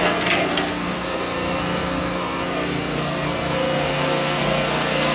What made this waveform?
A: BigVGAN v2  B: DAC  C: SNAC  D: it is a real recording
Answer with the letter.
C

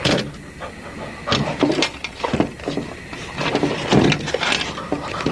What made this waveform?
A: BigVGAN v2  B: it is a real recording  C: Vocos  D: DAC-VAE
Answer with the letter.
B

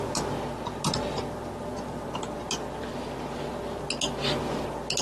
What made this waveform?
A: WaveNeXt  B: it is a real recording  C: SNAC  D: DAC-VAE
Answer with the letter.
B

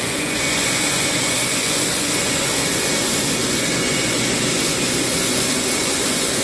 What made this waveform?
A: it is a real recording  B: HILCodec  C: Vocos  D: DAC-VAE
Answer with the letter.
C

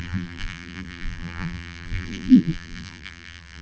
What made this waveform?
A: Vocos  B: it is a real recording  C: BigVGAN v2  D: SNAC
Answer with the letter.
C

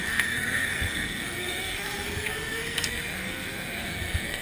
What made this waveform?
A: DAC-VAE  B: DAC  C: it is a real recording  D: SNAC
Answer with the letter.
D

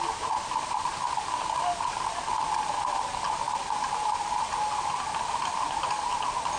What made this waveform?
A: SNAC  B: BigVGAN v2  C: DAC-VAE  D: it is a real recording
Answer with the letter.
D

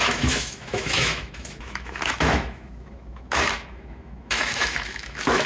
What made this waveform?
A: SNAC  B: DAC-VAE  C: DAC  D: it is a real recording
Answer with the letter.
B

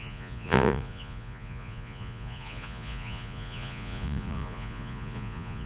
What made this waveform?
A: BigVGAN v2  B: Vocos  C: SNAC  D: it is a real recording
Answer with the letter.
B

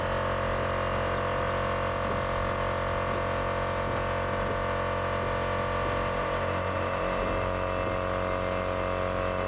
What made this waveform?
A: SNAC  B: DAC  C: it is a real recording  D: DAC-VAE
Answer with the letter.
C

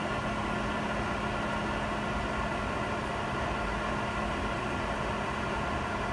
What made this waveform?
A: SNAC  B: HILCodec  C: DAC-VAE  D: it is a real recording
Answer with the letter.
D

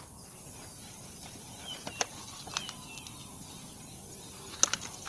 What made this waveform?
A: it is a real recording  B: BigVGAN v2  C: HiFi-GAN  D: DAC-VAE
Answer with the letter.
A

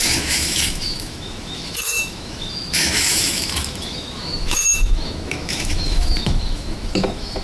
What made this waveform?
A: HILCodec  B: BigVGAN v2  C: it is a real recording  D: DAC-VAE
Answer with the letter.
D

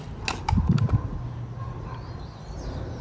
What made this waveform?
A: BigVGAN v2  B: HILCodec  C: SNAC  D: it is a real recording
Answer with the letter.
D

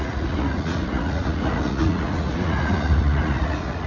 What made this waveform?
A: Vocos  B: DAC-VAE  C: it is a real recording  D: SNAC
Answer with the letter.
A